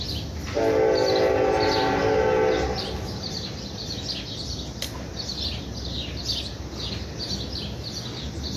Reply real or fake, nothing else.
real